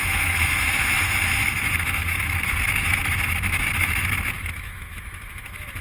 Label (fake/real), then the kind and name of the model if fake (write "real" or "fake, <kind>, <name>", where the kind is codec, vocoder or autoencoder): fake, autoencoder, DAC-VAE